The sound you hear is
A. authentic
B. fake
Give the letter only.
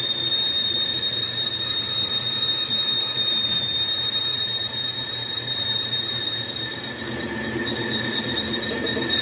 A